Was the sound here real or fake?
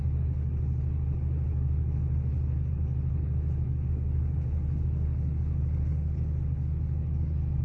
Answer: fake